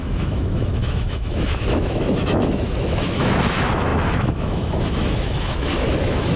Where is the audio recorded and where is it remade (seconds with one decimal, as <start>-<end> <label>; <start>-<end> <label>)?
0.0-6.4 remade

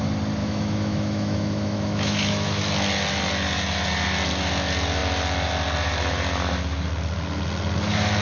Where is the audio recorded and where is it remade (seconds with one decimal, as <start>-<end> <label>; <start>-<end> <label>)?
0.0-0.4 recorded; 0.4-2.6 remade; 2.6-8.2 recorded

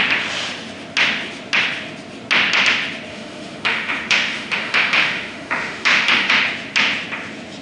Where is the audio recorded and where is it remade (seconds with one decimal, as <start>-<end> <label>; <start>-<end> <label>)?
0.0-3.1 recorded; 3.1-6.3 remade; 6.3-7.6 recorded

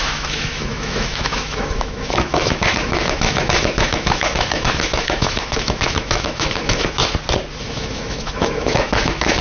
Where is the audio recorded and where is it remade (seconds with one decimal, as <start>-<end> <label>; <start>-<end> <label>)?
0.0-7.0 remade; 7.0-7.6 recorded; 7.6-9.4 remade